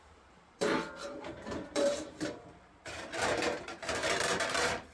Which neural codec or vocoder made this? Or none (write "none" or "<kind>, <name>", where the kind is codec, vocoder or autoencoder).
vocoder, BigVGAN v2